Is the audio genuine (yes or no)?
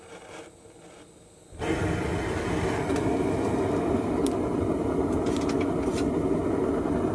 no